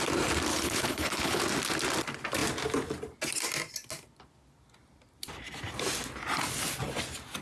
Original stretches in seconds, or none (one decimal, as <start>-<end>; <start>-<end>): 0.0-0.5; 1.4-7.4